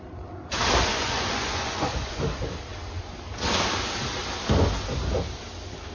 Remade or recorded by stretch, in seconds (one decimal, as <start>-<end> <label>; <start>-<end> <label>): 0.0-0.9 recorded; 0.9-2.2 remade; 2.2-5.9 recorded